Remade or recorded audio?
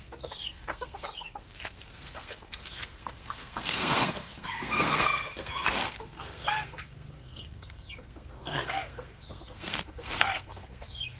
remade